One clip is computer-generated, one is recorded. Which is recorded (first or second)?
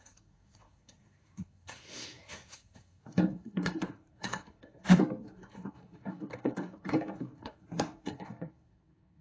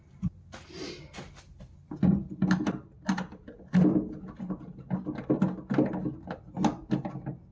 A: second